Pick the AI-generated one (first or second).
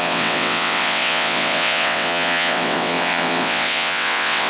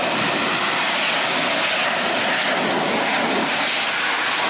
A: first